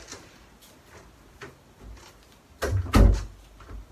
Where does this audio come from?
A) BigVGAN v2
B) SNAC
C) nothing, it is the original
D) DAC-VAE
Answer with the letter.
C